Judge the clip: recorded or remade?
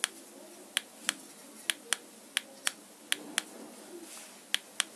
recorded